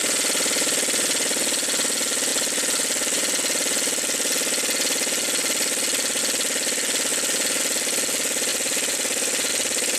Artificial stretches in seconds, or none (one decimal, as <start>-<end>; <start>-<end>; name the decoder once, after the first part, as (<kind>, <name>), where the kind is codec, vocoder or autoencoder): 8.5-9.5 (vocoder, BigVGAN v2)